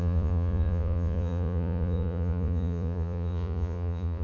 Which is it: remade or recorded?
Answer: remade